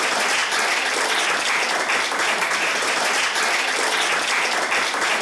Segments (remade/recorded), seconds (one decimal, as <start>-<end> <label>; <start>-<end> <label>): 0.0-5.2 recorded